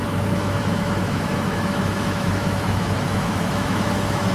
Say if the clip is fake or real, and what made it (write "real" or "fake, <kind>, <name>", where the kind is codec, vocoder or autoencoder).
fake, autoencoder, DAC-VAE